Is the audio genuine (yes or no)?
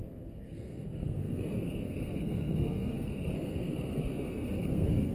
no